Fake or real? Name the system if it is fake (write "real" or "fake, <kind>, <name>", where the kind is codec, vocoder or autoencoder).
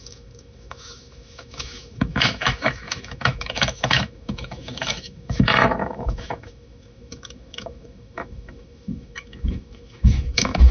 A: fake, autoencoder, DAC-VAE